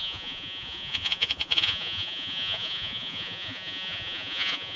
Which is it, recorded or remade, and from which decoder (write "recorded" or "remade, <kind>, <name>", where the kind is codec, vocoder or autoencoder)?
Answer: remade, vocoder, Vocos